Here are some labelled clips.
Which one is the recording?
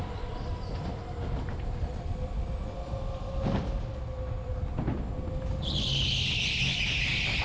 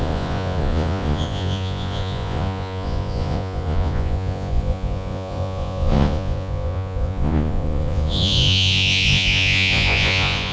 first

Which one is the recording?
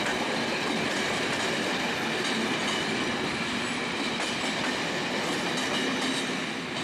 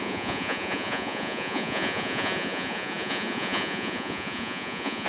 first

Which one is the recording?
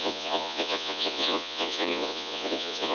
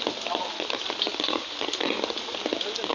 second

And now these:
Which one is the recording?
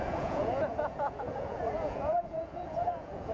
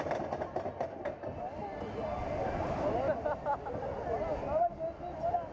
second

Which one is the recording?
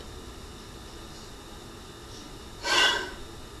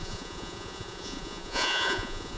first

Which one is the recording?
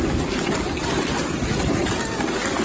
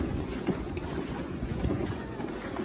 first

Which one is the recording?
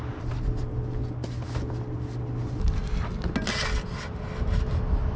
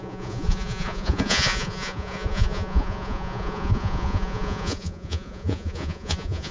first